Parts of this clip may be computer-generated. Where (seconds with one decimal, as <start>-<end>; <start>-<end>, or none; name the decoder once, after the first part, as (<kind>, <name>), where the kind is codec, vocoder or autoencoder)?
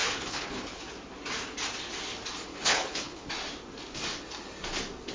0.0-0.8 (codec, HILCodec); 2.5-3.3